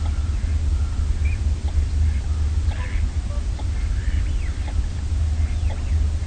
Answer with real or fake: real